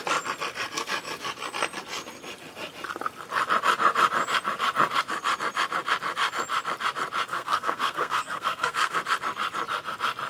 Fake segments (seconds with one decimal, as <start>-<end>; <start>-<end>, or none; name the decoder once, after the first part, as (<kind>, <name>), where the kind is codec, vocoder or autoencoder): 7.3-9.0 (codec, SNAC)